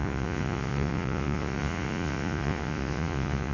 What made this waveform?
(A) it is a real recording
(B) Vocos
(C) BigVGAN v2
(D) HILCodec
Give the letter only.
B